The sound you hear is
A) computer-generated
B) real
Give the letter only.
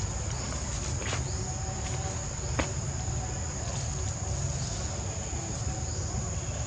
B